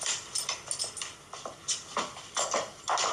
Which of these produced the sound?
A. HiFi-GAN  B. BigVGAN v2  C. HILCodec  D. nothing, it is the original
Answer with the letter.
D